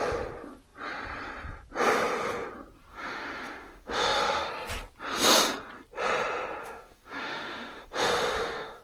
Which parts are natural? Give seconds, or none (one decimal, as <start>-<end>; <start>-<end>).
0.0-2.9; 4.5-6.6